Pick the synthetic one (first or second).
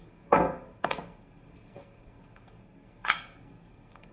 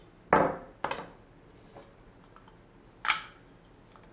first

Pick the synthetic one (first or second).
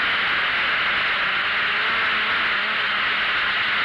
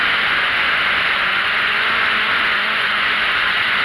second